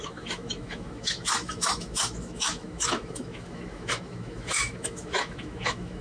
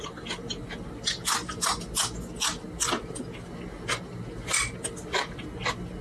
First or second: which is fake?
first